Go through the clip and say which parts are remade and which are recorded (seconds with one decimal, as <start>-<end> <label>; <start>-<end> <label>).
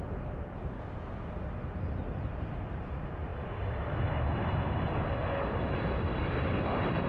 0.0-7.1 recorded